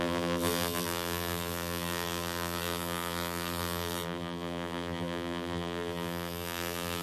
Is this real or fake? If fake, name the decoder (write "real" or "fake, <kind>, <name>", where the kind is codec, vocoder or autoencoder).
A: fake, vocoder, BigVGAN v2